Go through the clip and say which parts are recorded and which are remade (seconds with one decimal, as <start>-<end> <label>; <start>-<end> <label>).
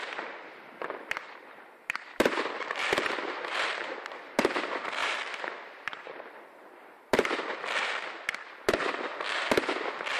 0.0-4.0 remade; 4.0-5.0 recorded; 5.0-8.0 remade; 8.0-10.2 recorded